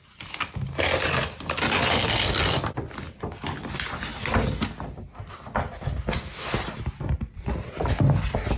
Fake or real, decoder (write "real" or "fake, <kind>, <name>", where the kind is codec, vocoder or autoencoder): real